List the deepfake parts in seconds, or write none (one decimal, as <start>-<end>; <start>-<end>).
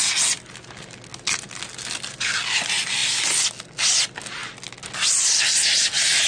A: none